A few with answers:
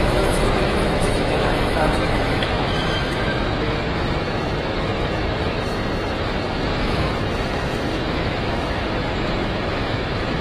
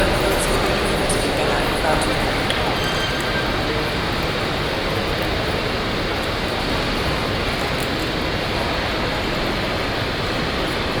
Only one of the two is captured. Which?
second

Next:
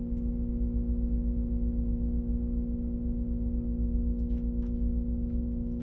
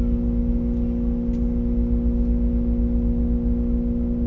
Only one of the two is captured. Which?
second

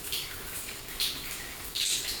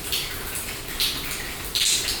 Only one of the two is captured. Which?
second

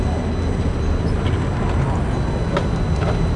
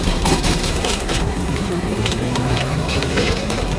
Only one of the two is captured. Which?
first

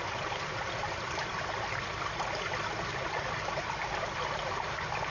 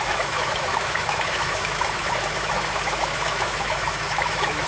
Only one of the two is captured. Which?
first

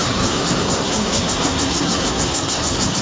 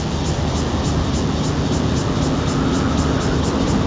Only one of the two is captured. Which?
second